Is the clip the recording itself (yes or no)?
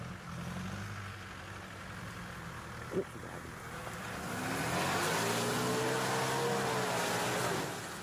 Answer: yes